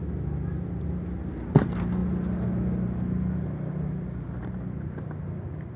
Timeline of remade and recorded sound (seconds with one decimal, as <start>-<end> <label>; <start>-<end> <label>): 0.0-5.8 recorded